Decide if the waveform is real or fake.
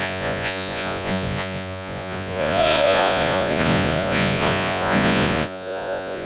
fake